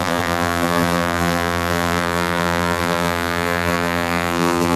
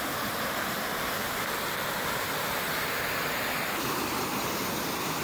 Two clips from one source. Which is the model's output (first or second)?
first